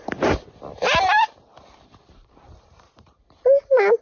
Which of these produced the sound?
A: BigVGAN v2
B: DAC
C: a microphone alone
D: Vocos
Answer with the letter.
A